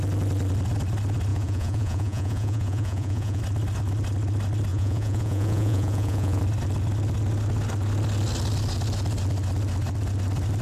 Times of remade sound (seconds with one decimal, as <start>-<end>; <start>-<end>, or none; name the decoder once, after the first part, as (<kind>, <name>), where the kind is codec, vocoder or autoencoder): 1.3-3.4 (vocoder, Vocos); 4.7-6.4